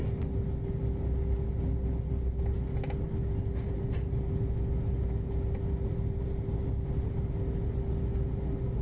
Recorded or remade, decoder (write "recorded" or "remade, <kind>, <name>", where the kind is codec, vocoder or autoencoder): recorded